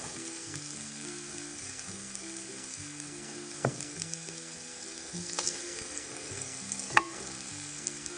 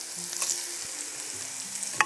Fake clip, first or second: first